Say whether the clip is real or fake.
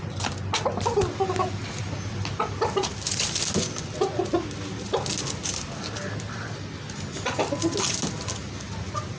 real